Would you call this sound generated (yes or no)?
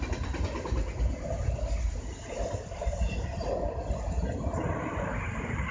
no